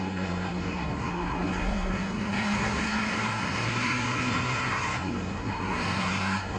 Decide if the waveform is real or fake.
fake